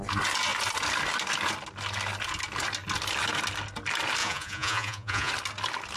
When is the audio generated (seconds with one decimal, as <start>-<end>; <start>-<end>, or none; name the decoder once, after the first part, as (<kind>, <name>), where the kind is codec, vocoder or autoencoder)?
4.2-5.3 (vocoder, Vocos)